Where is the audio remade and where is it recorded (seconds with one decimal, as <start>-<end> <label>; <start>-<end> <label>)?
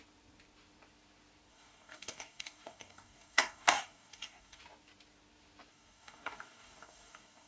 0.0-1.5 recorded; 1.5-4.6 remade; 4.6-5.7 recorded; 5.7-7.5 remade